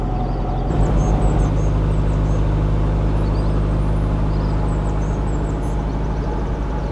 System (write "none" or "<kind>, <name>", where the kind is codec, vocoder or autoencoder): none